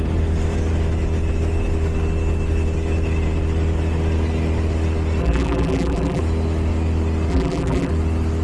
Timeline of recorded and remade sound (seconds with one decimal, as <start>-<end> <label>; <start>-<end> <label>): 0.0-5.2 recorded; 5.2-6.2 remade; 6.2-7.3 recorded; 7.3-7.9 remade; 7.9-8.4 recorded